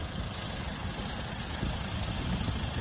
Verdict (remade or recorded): recorded